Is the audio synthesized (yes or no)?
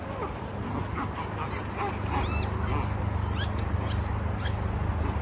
no